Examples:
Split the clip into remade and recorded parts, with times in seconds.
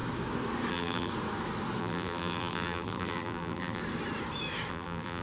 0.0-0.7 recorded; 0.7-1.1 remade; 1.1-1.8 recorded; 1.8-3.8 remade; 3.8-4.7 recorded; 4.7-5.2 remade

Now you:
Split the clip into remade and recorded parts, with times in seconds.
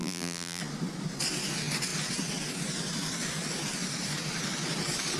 0.0-0.6 remade; 0.6-5.2 recorded